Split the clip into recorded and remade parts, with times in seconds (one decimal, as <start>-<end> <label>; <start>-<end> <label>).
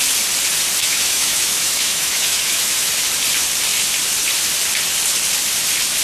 0.0-0.8 recorded; 0.8-2.9 remade; 2.9-6.0 recorded